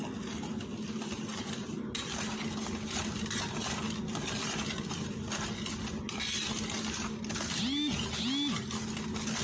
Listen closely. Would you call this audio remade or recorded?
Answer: recorded